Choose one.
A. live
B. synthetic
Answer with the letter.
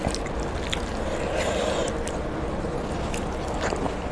A